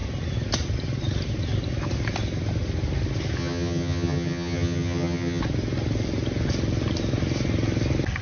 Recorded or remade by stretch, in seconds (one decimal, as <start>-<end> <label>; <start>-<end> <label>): 0.0-3.4 recorded; 3.4-5.4 remade; 5.4-8.2 recorded